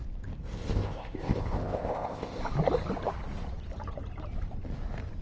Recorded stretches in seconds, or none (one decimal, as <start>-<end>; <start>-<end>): 0.0-0.4; 2.4-5.2